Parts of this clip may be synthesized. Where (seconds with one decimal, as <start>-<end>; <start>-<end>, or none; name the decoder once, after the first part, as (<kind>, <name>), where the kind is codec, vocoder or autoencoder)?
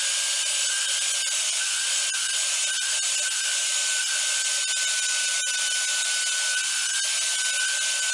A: none